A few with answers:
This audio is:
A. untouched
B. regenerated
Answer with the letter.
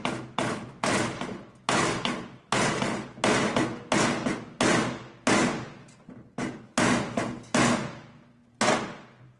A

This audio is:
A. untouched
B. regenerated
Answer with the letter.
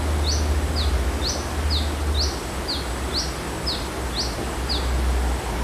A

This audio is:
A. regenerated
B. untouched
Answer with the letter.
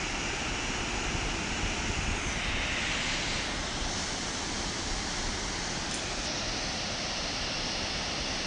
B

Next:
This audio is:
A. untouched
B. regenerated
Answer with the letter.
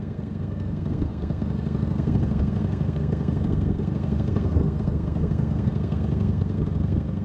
B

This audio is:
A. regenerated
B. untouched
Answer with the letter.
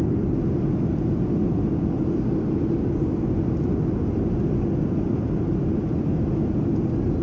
B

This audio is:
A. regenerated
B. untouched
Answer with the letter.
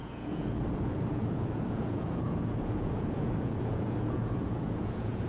A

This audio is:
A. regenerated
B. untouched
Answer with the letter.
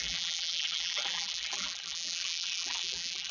A